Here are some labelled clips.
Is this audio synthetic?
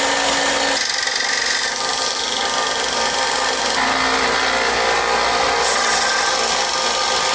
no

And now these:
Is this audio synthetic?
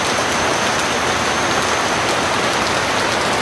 no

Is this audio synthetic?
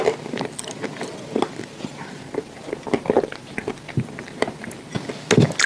no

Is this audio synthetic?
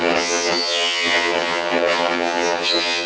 yes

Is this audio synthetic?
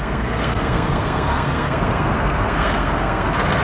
yes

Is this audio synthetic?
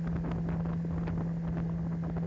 no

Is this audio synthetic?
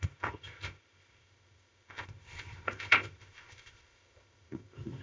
yes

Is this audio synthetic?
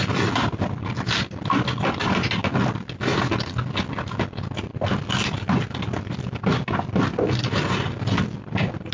no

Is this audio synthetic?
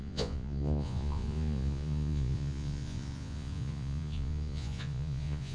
yes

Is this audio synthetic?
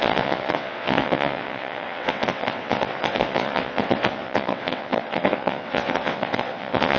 yes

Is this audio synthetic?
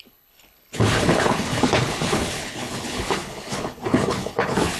yes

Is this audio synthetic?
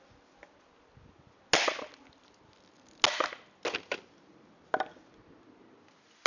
no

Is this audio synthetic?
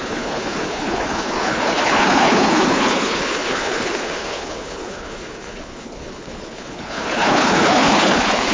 yes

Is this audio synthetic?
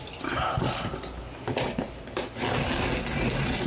no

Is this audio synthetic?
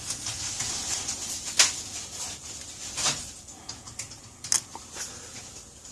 no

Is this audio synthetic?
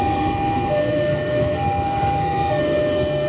yes